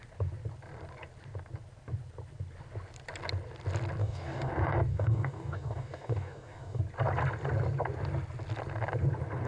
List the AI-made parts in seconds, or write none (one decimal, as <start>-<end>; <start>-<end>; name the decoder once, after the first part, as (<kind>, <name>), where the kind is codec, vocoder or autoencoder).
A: 4.0-4.5 (codec, DAC); 4.9-6.8

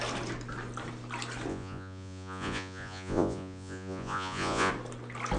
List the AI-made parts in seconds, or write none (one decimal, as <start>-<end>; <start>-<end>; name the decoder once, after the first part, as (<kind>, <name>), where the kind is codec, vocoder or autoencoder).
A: 1.5-4.7 (vocoder, Vocos)

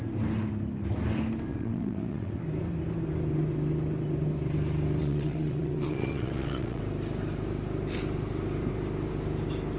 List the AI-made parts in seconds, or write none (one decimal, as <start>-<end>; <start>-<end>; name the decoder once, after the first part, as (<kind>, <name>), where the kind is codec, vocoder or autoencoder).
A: 1.5-2.4 (vocoder, WaveNeXt); 5.0-6.8

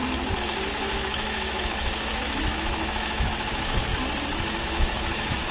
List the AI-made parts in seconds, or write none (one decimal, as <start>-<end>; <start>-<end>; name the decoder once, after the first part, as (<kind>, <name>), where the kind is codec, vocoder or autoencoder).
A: 0.7-3.9 (autoencoder, DAC-VAE); 4.6-5.5

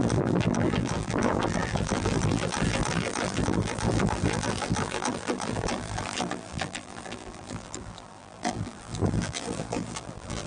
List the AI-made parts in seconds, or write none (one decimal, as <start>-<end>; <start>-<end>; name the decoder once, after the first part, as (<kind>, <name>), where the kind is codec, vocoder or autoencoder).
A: 0.0-10.5 (vocoder, BigVGAN v2)

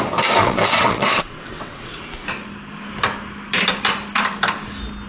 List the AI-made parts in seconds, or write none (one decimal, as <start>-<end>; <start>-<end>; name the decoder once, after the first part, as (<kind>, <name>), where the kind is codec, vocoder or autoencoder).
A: 0.4-2.0 (vocoder, WaveNeXt)